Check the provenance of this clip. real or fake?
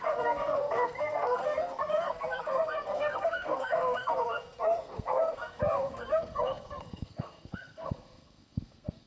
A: fake